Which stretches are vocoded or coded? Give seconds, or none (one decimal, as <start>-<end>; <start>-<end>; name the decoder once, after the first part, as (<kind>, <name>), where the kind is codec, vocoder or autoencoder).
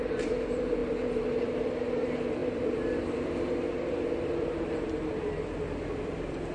0.0-6.5 (vocoder, BigVGAN v2)